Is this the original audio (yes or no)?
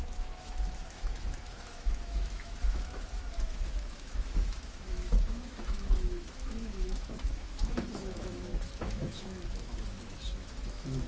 no